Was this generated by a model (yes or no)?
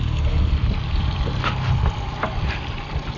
no